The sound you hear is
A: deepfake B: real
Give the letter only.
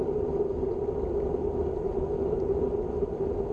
B